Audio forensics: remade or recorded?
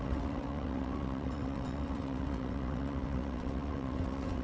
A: remade